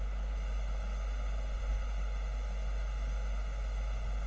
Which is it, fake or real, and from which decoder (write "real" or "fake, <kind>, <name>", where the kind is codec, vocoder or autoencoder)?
real